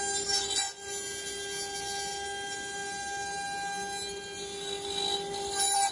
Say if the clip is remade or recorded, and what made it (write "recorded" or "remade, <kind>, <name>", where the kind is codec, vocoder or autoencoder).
recorded